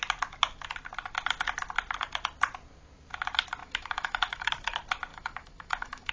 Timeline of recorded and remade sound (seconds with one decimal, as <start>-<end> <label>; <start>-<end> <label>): 0.0-3.6 recorded; 3.6-4.5 remade; 4.5-5.1 recorded; 5.1-6.1 remade